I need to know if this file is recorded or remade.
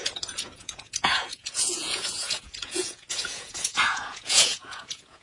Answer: remade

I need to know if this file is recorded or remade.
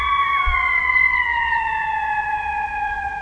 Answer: remade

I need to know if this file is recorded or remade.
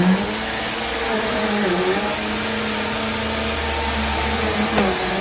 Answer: recorded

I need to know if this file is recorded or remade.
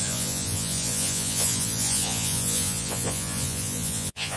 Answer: remade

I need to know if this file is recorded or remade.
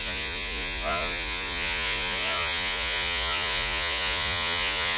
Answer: remade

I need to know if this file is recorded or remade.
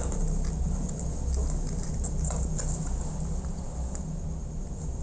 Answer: recorded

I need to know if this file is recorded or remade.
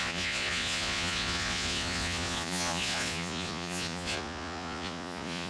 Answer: remade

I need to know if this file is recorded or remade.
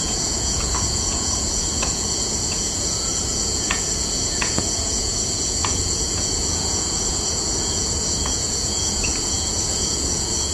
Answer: remade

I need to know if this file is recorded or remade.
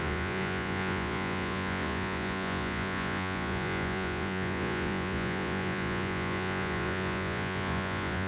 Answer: remade